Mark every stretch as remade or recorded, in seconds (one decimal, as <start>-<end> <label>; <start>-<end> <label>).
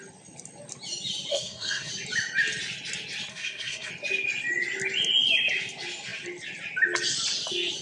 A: 0.0-1.3 recorded; 1.3-1.9 remade; 1.9-3.3 recorded; 3.3-3.9 remade; 3.9-7.8 recorded